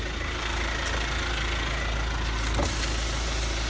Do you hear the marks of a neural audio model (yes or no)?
no